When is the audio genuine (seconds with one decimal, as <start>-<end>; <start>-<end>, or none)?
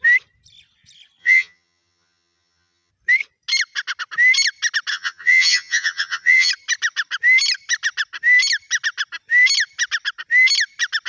0.0-1.2; 2.9-4.9; 6.5-11.1